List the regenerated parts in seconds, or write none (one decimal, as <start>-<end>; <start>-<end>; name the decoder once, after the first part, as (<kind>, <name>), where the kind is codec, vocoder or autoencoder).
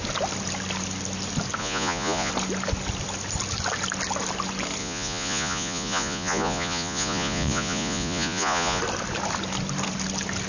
1.6-2.3 (vocoder, Vocos); 4.8-8.8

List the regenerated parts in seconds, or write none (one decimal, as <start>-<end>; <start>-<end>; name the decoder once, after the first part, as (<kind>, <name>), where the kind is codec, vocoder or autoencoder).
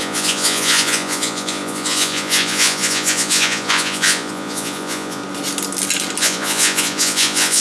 0.0-5.2 (vocoder, Vocos); 6.2-7.6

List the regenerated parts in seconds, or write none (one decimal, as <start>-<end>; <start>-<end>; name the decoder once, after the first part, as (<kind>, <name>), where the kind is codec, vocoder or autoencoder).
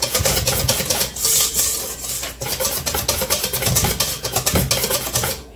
0.0-1.5 (vocoder, Vocos); 4.9-5.6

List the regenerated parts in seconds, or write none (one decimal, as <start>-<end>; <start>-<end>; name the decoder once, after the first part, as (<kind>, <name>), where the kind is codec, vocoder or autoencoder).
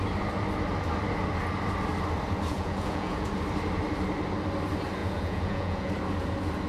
2.5-3.3 (vocoder, Vocos); 5.0-5.9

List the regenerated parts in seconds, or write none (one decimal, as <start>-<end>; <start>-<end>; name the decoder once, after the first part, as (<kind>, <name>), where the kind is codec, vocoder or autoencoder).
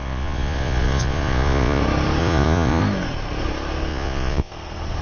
0.0-1.8 (vocoder, Vocos); 2.2-2.8; 3.9-4.5